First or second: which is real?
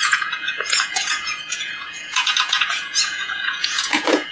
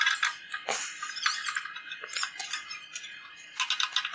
second